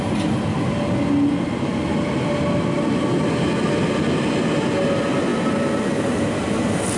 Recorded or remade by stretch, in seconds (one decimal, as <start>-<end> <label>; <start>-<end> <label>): 0.0-7.0 recorded